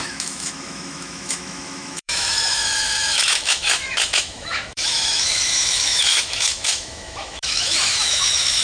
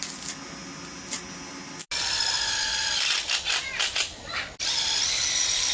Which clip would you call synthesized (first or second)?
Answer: first